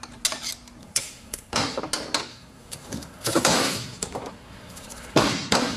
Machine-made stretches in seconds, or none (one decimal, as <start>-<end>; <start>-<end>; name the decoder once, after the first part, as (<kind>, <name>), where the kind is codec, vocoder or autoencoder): 0.8-1.8 (codec, SNAC); 2.3-5.8